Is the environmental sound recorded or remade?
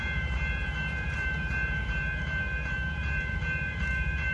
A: remade